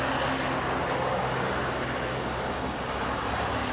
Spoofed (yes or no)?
no